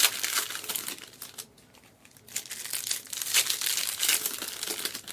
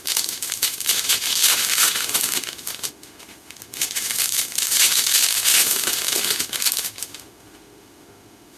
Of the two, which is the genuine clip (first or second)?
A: first